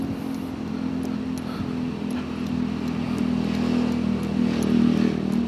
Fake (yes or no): no